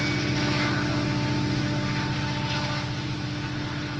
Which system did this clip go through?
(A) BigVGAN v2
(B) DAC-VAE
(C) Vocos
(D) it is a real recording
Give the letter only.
D